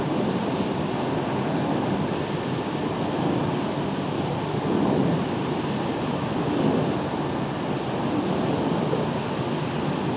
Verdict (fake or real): real